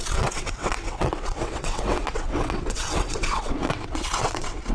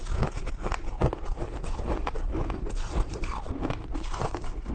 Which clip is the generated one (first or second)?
first